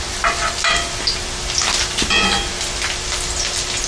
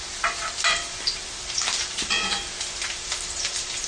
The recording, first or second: first